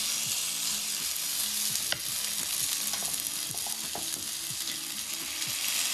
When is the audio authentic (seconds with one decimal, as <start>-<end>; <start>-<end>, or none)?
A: 0.0-5.9

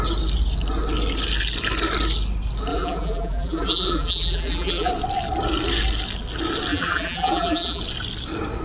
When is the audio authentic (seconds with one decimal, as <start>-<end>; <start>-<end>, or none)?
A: 0.0-2.7; 4.9-6.7; 7.8-8.6

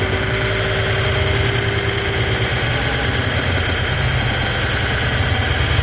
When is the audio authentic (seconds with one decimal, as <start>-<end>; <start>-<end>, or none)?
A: 0.0-5.8

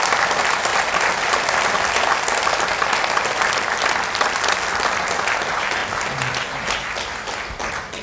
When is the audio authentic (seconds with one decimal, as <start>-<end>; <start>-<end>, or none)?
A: 0.0-8.0